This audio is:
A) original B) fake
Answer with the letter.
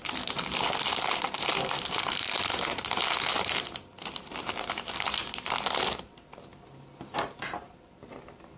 A